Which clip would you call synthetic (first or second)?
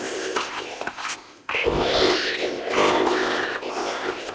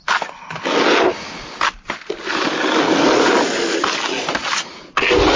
first